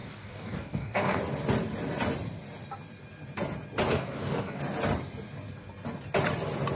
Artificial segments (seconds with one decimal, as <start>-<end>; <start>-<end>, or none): 0.0-1.2; 3.9-4.6